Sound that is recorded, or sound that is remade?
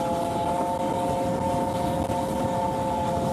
recorded